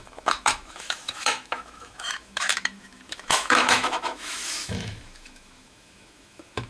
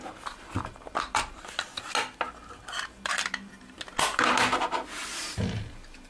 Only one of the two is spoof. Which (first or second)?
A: first